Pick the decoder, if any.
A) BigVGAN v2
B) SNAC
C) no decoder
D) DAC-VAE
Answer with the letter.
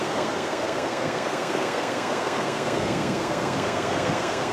B